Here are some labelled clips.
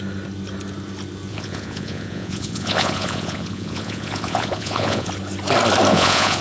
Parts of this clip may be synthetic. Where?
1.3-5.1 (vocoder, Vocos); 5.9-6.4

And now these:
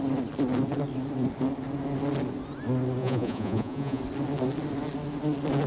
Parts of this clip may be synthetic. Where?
3.0-4.0 (vocoder, Vocos)